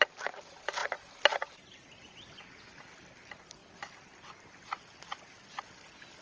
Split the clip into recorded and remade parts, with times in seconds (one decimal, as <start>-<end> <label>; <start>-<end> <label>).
0.0-6.2 recorded